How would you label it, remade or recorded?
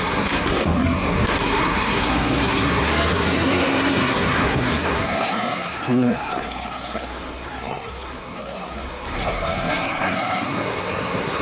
remade